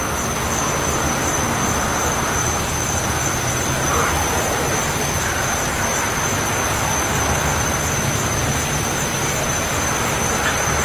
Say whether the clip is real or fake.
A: real